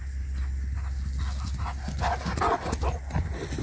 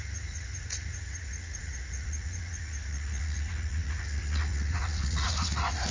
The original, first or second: first